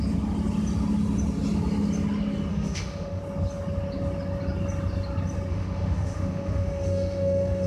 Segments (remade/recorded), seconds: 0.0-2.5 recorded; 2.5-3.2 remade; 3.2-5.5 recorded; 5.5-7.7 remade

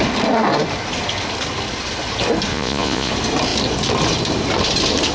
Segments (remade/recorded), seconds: 0.0-2.5 recorded; 2.5-3.1 remade; 3.1-5.1 recorded

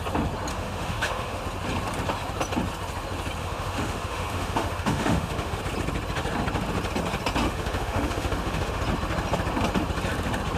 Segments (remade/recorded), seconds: 0.0-0.5 recorded; 0.5-1.4 remade; 1.4-3.4 recorded; 3.4-5.6 remade; 5.6-7.4 recorded; 7.4-8.8 remade; 8.8-10.6 recorded

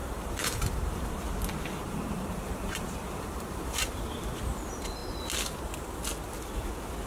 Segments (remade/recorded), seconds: 0.0-1.4 remade; 1.4-1.8 recorded; 1.8-4.2 remade; 4.2-7.1 recorded

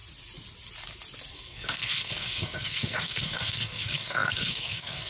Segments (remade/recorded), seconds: 0.0-1.3 recorded; 1.3-5.1 remade

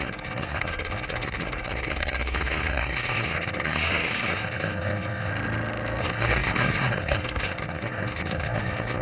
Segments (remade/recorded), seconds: 0.0-5.3 remade; 5.3-6.0 recorded; 6.0-9.0 remade